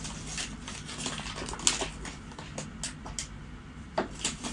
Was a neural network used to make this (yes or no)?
no